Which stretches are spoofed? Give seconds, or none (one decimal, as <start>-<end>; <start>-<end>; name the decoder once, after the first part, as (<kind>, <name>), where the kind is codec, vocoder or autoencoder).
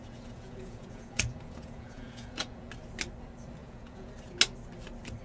0.0-2.7 (vocoder, Vocos); 3.6-4.1